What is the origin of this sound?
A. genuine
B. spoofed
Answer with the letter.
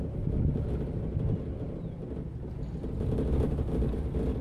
A